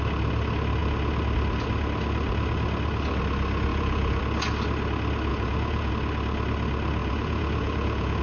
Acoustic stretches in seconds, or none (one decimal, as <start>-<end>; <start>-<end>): 0.0-3.7; 4.2-5.3; 5.9-7.0